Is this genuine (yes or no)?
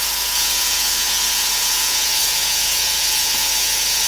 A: no